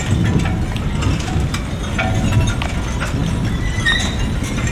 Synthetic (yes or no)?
no